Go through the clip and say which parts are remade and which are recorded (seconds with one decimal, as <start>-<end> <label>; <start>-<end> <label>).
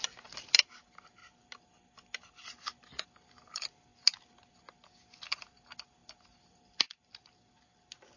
0.0-8.2 recorded